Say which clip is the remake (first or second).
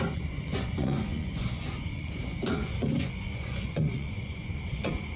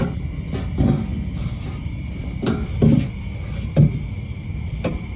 first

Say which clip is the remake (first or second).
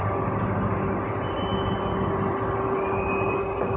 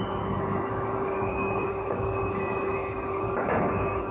second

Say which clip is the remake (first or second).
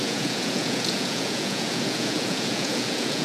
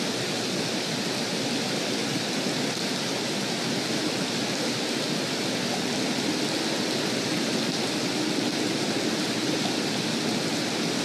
first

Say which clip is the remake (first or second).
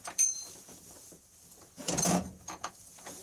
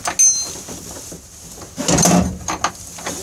first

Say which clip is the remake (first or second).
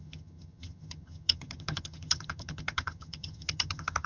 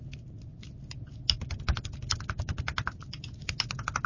first